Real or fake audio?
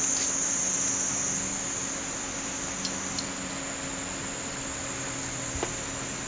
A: real